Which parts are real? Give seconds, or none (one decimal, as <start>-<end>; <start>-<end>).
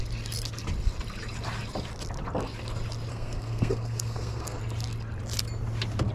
0.0-3.1; 4.6-6.1